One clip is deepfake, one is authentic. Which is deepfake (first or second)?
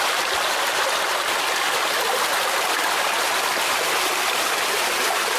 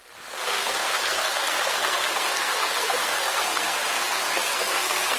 second